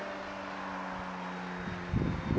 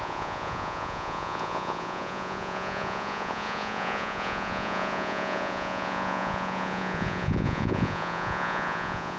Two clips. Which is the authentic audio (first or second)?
first